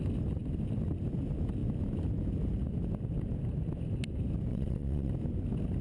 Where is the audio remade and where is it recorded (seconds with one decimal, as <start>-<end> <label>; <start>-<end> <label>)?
0.0-4.5 recorded; 4.5-5.1 remade; 5.1-5.8 recorded